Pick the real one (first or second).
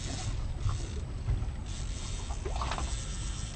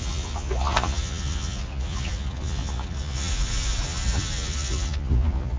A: first